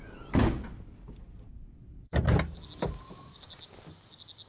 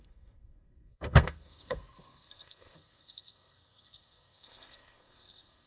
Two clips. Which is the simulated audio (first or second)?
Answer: second